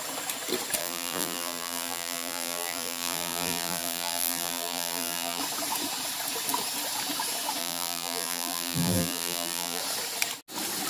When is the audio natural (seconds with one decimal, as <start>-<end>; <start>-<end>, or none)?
0.0-0.8; 5.4-7.6; 9.8-10.9